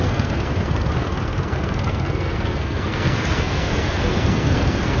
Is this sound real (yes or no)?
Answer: no